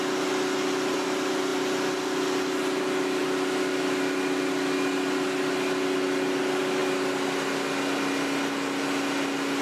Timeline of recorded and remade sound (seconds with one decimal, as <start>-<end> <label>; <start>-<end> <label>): 0.0-9.6 recorded